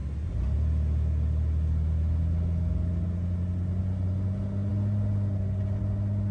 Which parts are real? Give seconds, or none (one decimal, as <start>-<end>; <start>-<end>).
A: 0.0-6.3